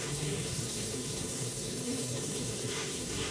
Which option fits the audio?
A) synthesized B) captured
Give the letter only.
A